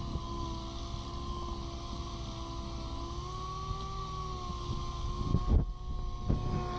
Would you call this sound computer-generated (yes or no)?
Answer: no